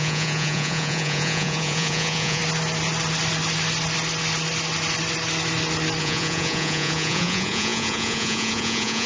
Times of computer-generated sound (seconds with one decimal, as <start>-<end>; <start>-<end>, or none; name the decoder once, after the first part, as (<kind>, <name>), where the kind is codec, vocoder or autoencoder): 0.0-2.4 (vocoder, Vocos); 6.0-9.1